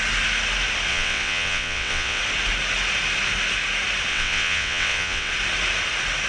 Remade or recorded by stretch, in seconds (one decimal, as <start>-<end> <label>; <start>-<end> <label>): 0.0-0.9 recorded; 0.9-2.2 remade; 2.2-4.1 recorded; 4.1-5.3 remade; 5.3-6.3 recorded